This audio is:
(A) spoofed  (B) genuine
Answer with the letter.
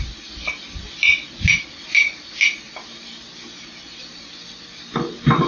B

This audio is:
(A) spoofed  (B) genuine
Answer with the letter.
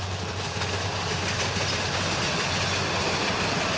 B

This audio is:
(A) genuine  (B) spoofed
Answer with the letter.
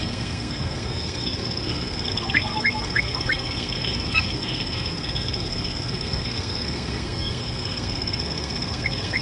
B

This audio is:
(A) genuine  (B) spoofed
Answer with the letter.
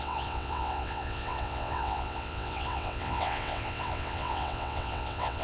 B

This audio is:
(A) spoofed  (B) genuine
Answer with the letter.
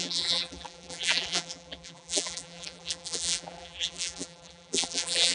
A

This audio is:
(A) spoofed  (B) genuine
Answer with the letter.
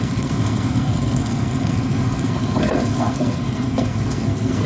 A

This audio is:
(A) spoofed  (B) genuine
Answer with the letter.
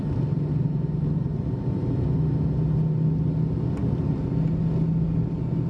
B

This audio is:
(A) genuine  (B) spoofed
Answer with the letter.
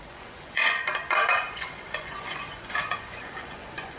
B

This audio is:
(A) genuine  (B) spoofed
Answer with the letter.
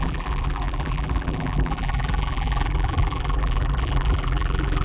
B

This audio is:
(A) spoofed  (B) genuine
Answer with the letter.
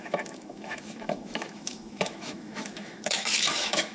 A